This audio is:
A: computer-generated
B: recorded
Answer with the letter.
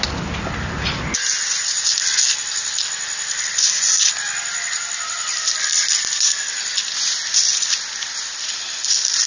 B